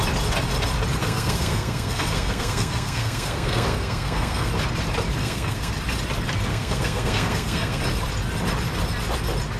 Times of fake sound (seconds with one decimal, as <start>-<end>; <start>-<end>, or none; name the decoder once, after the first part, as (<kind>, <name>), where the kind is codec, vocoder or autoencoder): 1.0-4.5 (codec, SNAC); 5.2-5.7; 6.5-7.8